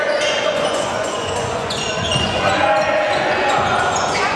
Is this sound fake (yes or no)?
yes